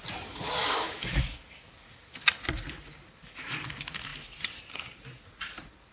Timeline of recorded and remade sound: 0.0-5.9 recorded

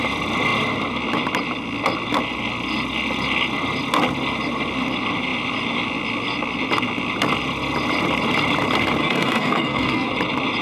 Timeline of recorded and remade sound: 0.0-9.0 recorded; 9.0-10.1 remade; 10.1-10.6 recorded

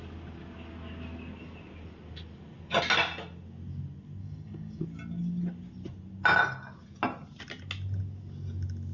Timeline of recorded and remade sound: 0.0-4.2 recorded; 4.2-4.8 remade; 4.8-8.9 recorded

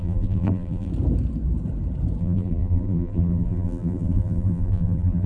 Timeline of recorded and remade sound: 0.0-0.9 remade; 0.9-2.2 recorded; 2.2-5.3 remade

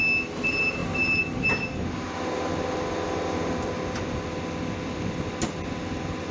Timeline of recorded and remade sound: 0.0-6.3 recorded